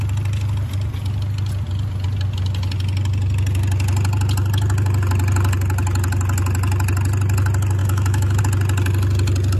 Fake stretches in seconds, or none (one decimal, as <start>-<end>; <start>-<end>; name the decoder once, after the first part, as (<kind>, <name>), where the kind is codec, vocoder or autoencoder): 7.8-8.4 (autoencoder, DAC-VAE)